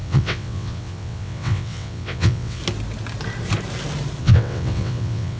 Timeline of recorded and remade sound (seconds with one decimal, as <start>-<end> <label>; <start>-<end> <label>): 0.0-2.6 remade; 2.6-4.2 recorded; 4.2-5.4 remade